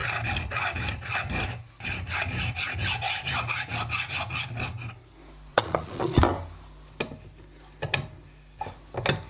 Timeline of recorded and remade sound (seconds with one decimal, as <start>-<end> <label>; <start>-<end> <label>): 0.0-5.5 recorded; 5.5-6.2 remade; 6.2-9.3 recorded